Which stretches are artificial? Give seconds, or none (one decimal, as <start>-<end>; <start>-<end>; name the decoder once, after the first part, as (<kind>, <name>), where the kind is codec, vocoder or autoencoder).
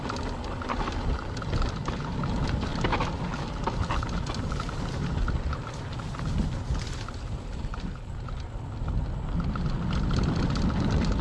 none